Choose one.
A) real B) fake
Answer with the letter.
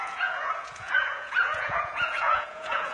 B